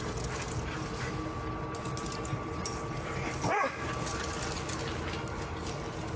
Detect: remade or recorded recorded